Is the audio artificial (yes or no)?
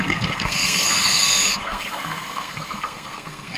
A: yes